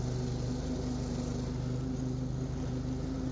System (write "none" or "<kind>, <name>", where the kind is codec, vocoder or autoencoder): none